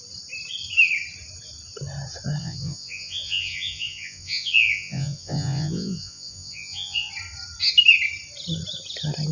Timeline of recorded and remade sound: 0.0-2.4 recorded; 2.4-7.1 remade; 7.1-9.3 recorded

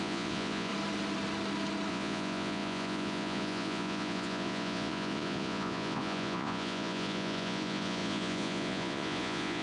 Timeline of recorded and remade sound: 0.0-0.7 remade; 0.7-1.9 recorded; 1.9-9.6 remade

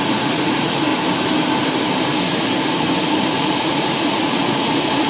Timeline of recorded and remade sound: 0.0-0.9 remade; 0.9-3.3 recorded; 3.3-5.1 remade

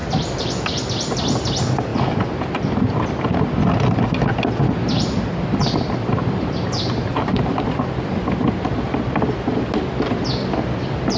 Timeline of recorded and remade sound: 0.0-0.8 remade; 0.8-1.9 recorded; 1.9-3.1 remade; 3.1-5.6 recorded; 5.6-6.1 remade; 6.1-7.1 recorded; 7.1-8.3 remade; 8.3-11.2 recorded

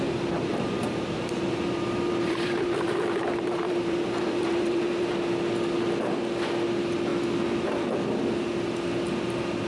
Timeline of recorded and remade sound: 0.0-0.5 recorded; 0.5-5.1 remade; 5.1-9.7 recorded

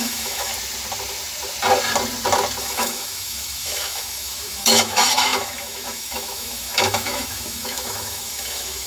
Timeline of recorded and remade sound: 0.0-0.5 remade; 0.5-2.6 recorded; 2.6-8.9 remade

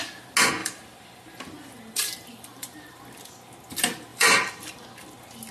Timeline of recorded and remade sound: 0.0-0.6 recorded; 0.6-3.0 remade; 3.0-4.1 recorded; 4.1-4.8 remade; 4.8-5.5 recorded

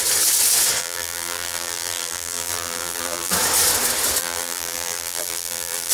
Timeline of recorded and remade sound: 0.0-0.8 recorded; 0.8-3.3 remade; 3.3-4.2 recorded; 4.2-5.9 remade